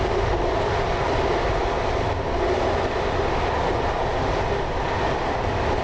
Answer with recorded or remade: remade